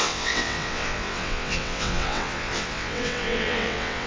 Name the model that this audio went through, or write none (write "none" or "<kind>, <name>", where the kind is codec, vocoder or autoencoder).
vocoder, WaveNeXt